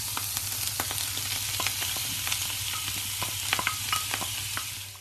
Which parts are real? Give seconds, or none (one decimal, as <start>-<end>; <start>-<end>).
0.0-2.0; 2.6-5.0